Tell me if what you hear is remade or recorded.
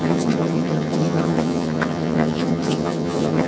remade